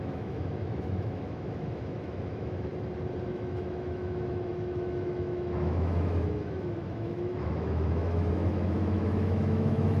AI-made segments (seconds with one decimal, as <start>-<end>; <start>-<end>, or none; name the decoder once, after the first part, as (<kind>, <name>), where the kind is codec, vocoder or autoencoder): 0.0-2.7 (autoencoder, DAC-VAE); 3.3-10.0